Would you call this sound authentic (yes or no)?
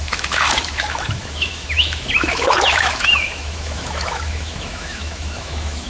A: no